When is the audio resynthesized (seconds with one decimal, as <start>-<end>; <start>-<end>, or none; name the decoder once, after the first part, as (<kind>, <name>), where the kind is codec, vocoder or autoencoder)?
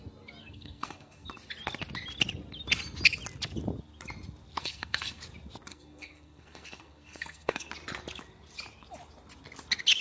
0.4-1.3 (codec, SNAC); 4.6-5.2; 5.7-7.7